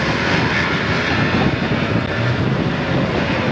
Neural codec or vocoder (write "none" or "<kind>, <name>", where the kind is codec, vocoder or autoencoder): none